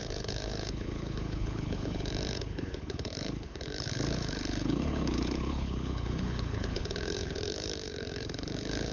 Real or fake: fake